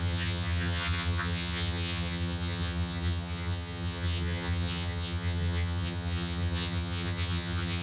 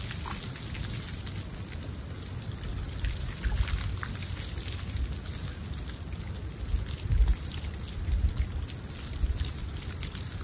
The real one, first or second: second